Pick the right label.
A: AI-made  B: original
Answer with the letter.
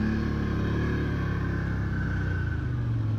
B